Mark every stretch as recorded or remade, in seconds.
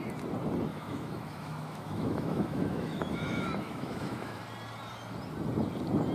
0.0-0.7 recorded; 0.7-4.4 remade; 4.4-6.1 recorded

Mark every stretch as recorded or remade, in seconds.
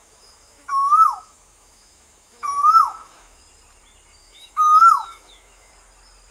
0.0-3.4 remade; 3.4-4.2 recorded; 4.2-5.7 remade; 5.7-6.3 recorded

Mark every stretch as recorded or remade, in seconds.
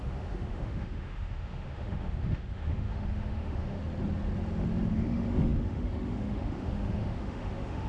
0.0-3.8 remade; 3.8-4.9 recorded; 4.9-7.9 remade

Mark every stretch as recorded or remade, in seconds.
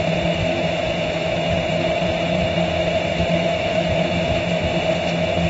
0.0-0.4 recorded; 0.4-2.4 remade; 2.4-3.2 recorded; 3.2-4.0 remade; 4.0-5.5 recorded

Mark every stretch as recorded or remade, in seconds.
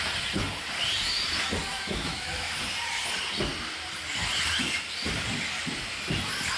0.0-1.7 recorded; 1.7-2.5 remade; 2.5-6.6 recorded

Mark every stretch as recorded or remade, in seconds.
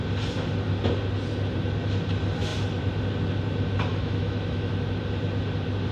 0.0-3.9 recorded; 3.9-4.7 remade; 4.7-5.9 recorded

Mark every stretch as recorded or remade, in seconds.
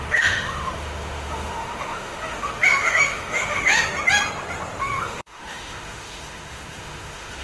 0.0-3.8 remade; 3.8-4.8 recorded; 4.8-7.4 remade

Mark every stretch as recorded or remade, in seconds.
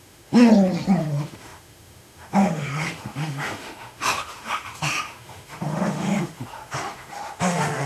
0.0-0.5 remade; 0.5-1.0 recorded; 1.0-7.9 remade